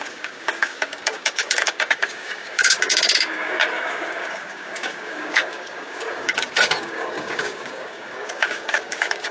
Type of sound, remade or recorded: remade